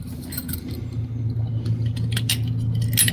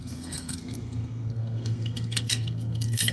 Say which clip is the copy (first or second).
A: second